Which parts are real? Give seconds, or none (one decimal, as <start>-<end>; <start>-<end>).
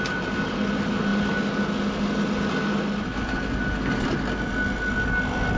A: 0.0-5.6